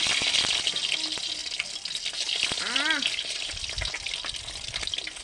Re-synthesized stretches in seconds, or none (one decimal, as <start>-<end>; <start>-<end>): none